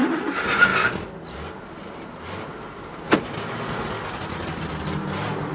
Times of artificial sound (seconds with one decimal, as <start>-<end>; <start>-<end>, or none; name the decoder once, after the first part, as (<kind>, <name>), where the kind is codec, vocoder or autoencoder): none